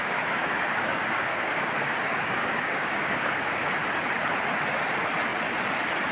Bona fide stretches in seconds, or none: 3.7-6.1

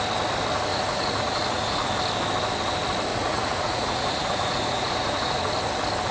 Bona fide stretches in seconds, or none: 0.0-0.7; 1.9-3.1; 5.5-6.1

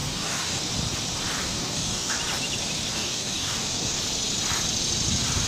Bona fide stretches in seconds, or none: 0.6-1.4; 2.2-2.9; 4.0-5.5